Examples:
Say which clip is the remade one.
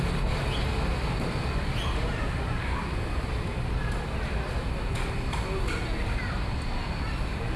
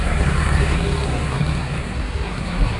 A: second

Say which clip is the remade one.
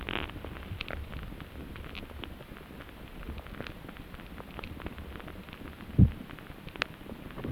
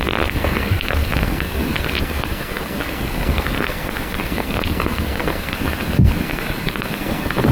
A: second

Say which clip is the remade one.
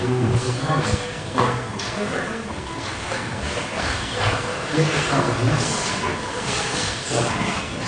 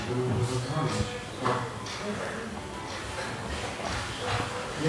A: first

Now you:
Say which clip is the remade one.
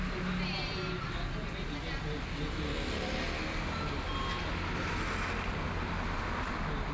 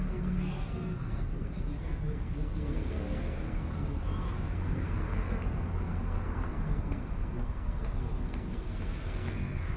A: second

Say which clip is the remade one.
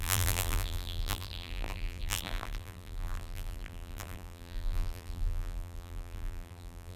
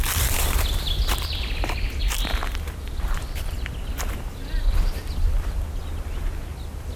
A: first